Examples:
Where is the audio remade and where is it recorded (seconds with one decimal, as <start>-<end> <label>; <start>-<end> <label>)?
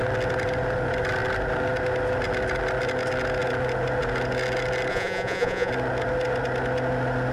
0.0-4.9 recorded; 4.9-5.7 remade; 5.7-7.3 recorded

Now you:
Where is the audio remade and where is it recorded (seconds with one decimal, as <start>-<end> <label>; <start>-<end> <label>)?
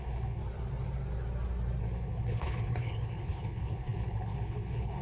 0.0-0.4 remade; 0.4-1.8 recorded; 1.8-5.0 remade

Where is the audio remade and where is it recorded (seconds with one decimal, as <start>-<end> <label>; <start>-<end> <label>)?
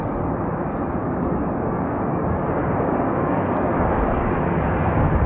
0.0-1.0 recorded; 1.0-4.2 remade; 4.2-5.3 recorded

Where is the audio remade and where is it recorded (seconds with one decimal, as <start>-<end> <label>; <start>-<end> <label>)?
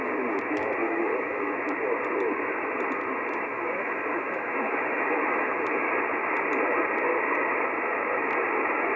0.0-0.8 recorded; 0.8-1.5 remade; 1.5-3.5 recorded; 3.5-5.9 remade; 5.9-9.0 recorded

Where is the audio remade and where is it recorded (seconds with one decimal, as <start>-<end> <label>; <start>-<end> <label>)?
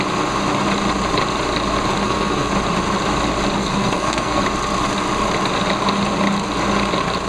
0.0-2.0 recorded; 2.0-2.5 remade; 2.5-3.6 recorded; 3.6-4.4 remade; 4.4-7.3 recorded